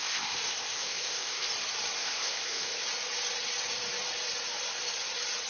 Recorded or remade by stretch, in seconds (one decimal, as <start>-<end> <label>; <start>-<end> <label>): 0.0-1.5 remade; 1.5-2.0 recorded; 2.0-2.8 remade; 2.8-5.5 recorded